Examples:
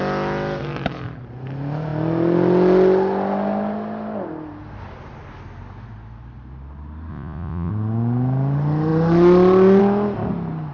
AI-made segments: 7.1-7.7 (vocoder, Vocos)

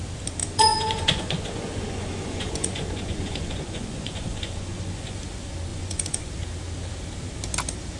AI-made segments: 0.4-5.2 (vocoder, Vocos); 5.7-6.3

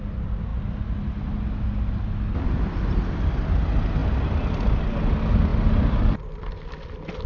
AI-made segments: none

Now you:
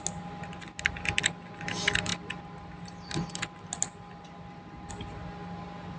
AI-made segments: none